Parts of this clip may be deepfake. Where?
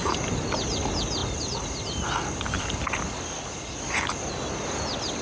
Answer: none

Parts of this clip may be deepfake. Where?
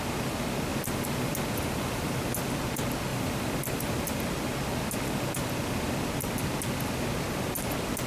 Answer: 0.7-2.6; 3.1-4.2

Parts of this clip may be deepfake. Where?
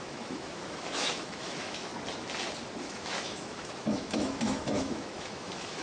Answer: 0.0-1.9; 2.8-5.8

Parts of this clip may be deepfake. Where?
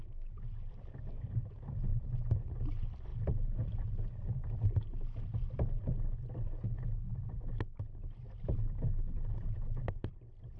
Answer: none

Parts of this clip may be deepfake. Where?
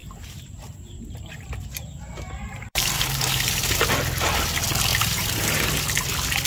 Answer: 0.0-3.8; 4.9-5.7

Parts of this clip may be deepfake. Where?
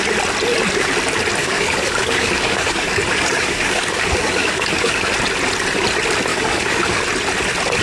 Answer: 1.4-5.1; 6.3-7.0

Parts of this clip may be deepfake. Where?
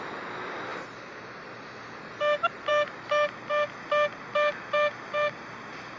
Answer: none